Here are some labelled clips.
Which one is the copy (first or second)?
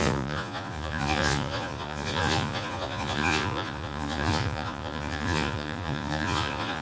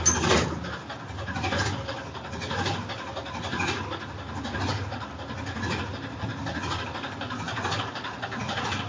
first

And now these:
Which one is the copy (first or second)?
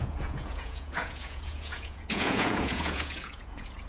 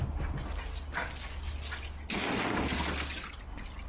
first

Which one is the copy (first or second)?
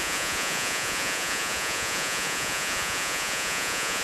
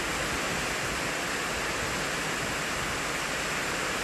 first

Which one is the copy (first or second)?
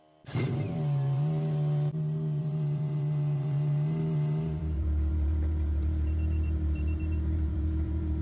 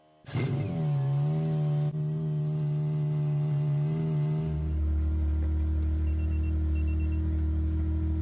first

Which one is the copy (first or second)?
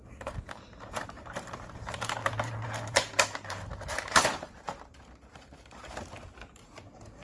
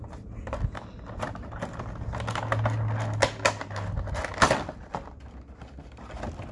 first